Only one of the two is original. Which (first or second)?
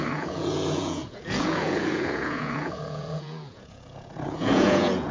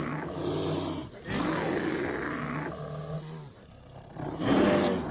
second